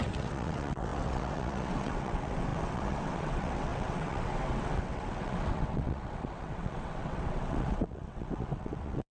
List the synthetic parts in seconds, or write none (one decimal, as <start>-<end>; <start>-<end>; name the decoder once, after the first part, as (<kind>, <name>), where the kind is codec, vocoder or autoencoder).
0.0-9.1 (vocoder, WaveNeXt)